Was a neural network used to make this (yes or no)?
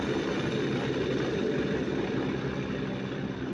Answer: no